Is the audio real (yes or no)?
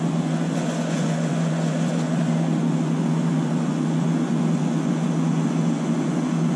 no